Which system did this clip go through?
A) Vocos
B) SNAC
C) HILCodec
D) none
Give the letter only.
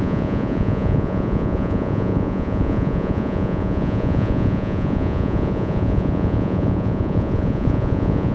A